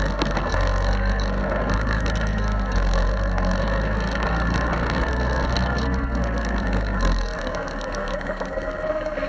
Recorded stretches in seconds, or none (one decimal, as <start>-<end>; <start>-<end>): none